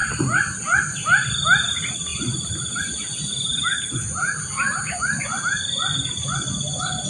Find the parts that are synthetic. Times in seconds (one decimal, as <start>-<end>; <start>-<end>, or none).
none